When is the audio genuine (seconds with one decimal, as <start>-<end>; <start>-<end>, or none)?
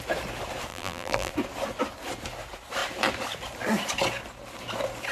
0.0-0.7; 1.3-5.1